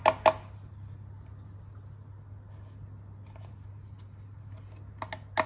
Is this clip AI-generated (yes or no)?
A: no